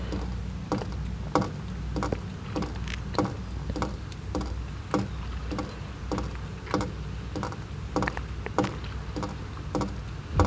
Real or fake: real